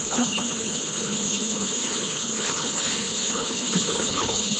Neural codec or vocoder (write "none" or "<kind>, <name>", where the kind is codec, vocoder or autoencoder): codec, HILCodec